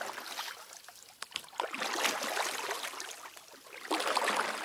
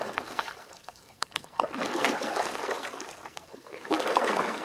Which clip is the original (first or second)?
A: first